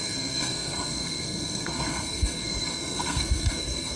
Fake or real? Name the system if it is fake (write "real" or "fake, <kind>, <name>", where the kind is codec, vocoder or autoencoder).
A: fake, codec, SNAC